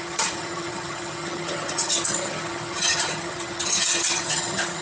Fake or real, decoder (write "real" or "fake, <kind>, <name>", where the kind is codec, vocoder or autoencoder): fake, vocoder, HiFi-GAN